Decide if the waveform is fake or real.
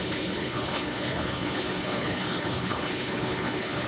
fake